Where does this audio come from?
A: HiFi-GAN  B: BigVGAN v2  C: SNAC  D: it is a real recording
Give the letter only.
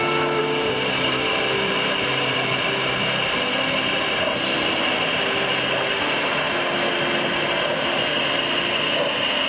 D